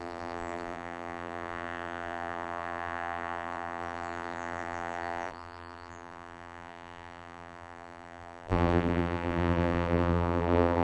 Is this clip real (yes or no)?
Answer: no